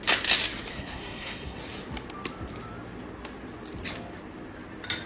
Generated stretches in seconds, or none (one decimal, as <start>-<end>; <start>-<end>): 0.7-1.6